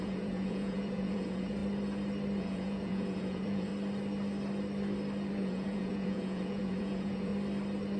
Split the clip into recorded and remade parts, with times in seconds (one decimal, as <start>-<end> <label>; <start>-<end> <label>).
0.0-1.6 remade; 1.6-2.4 recorded; 2.4-3.7 remade; 3.7-5.3 recorded; 5.3-7.3 remade; 7.3-8.0 recorded